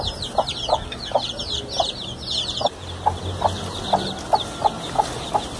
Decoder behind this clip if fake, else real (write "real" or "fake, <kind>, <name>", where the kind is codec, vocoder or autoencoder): real